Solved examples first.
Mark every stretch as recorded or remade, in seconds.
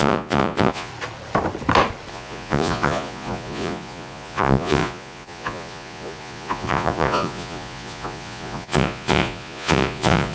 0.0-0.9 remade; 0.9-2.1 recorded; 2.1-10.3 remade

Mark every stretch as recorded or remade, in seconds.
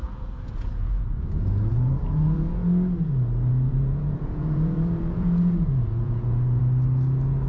0.0-2.5 remade; 2.5-3.7 recorded; 3.7-6.6 remade; 6.6-7.5 recorded